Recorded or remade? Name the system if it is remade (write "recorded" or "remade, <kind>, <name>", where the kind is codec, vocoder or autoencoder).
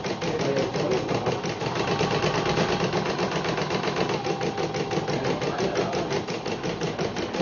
recorded